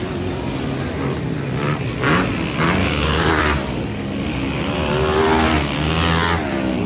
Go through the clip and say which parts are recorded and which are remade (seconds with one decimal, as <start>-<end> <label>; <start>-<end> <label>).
0.0-2.8 recorded; 2.8-3.4 remade; 3.4-6.9 recorded